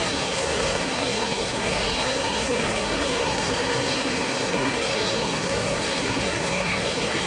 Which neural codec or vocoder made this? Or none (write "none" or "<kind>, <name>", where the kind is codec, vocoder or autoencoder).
codec, SNAC